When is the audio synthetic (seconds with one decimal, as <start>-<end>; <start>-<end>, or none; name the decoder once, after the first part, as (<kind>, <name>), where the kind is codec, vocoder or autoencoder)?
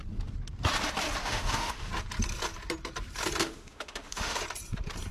1.2-1.9 (autoencoder, DAC-VAE); 3.4-4.4